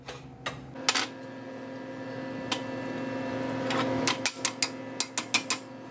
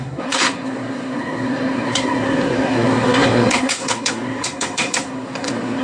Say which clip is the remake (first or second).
second